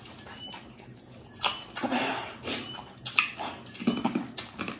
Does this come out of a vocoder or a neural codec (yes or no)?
no